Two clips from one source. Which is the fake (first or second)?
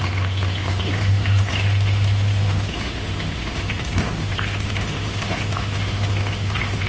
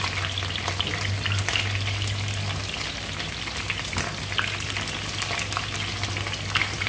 first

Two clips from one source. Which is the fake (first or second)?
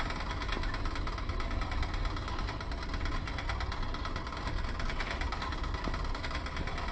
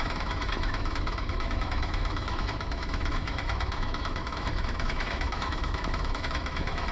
second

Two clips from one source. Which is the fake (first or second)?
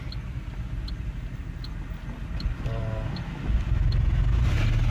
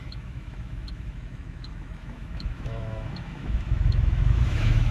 second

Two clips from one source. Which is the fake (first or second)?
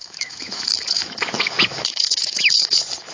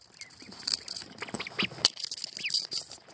first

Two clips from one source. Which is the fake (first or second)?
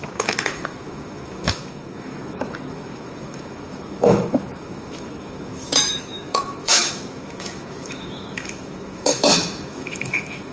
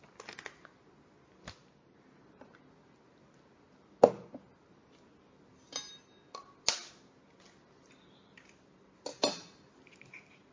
first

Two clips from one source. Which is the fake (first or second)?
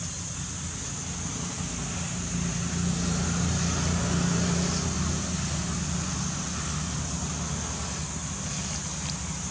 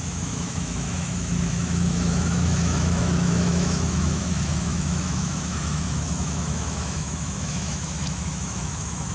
second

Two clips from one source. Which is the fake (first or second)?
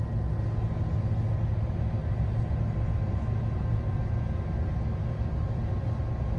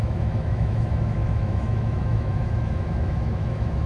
second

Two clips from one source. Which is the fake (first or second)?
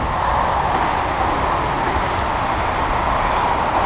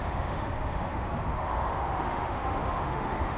second